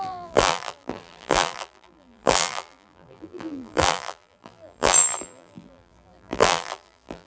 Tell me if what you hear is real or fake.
fake